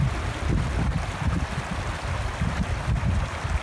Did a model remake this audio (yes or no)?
no